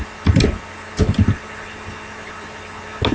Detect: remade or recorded recorded